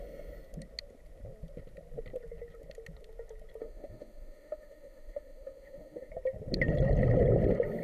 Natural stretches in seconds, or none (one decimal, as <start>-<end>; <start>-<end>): 0.0-3.6; 6.1-7.8

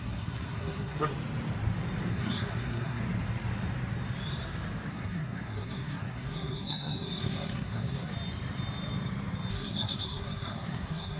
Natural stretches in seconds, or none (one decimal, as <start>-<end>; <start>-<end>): 1.1-2.1; 3.0-4.9; 8.1-9.5

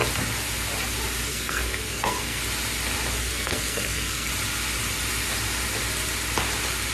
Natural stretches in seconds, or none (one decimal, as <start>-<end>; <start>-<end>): 0.0-1.3; 2.4-3.2; 4.3-6.9

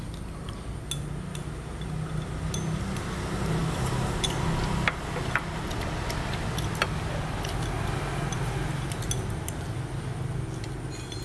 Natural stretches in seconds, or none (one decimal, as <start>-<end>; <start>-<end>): 0.0-11.2

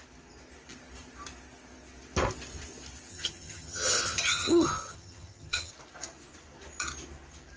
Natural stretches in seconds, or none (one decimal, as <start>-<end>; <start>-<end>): 0.0-3.1; 5.7-7.6

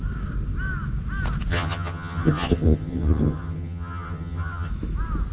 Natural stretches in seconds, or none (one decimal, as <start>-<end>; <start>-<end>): 0.0-1.5; 4.7-5.3